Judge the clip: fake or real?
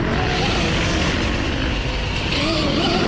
real